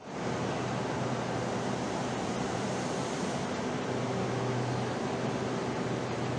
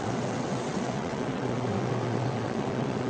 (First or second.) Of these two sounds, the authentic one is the first